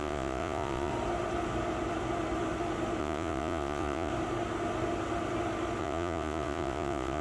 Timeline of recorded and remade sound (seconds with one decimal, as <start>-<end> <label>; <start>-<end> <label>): 0.0-0.9 remade; 0.9-3.0 recorded; 3.0-4.1 remade; 4.1-5.8 recorded; 5.8-7.2 remade